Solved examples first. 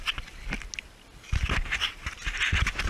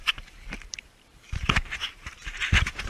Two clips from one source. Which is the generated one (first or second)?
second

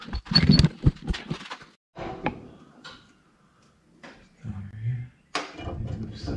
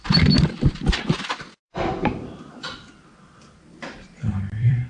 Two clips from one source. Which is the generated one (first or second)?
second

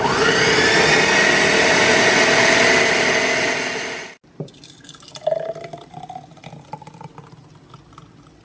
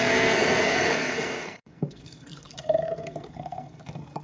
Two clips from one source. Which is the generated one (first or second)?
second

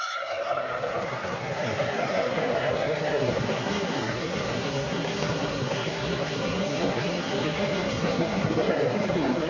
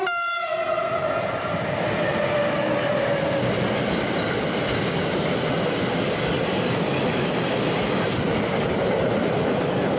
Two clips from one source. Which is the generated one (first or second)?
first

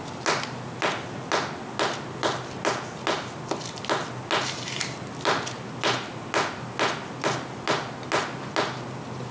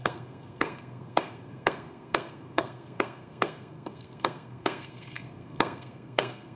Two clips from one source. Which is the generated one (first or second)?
second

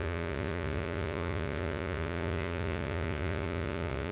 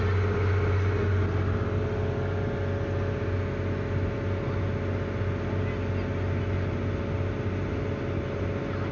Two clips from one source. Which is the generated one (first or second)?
first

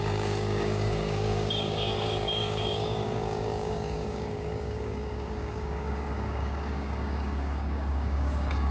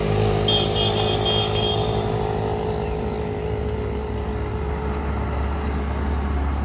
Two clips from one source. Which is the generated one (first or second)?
first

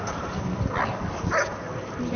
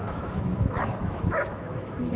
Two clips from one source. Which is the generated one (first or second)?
second